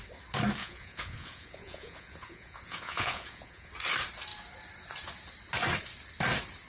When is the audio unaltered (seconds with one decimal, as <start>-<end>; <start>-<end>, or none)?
0.0-0.6; 3.7-6.7